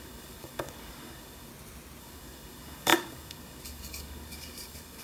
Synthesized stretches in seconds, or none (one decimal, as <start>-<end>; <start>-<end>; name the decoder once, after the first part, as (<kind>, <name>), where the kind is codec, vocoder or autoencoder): 0.0-1.5 (codec, DAC); 2.0-5.0